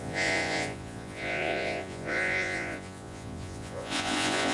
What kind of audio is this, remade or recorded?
remade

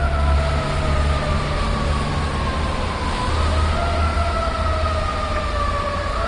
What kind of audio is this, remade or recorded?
recorded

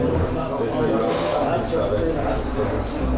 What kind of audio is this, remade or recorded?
recorded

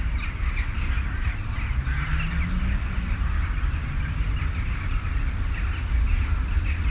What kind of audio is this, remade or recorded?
recorded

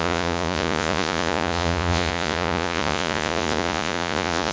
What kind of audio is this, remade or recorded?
remade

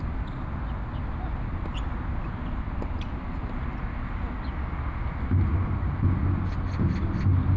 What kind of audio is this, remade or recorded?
recorded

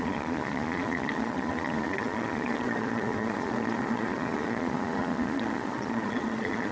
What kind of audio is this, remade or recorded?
remade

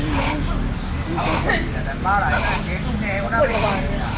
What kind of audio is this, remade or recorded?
recorded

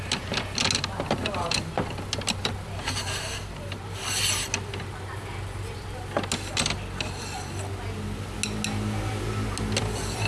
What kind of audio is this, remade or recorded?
recorded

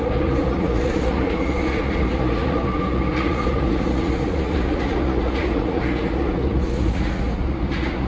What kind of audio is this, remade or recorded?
remade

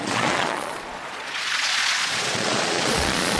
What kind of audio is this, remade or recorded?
remade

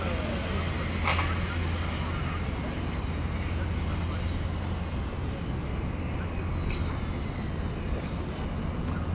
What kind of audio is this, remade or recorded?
recorded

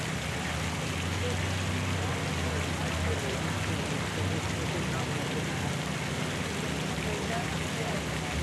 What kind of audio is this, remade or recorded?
recorded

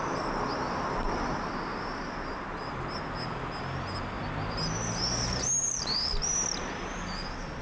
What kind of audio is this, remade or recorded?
recorded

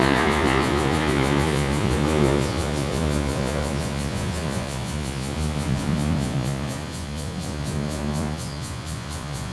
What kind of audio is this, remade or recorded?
remade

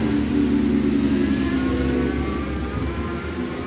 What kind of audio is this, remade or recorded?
recorded